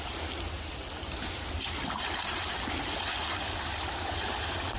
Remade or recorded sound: recorded